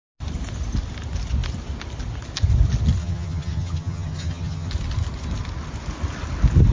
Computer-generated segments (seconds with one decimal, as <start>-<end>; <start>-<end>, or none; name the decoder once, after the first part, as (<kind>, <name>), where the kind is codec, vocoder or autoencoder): 3.0-4.7 (vocoder, HiFi-GAN)